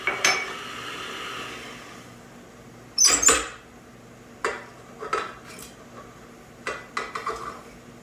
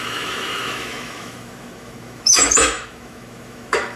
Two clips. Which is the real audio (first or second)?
first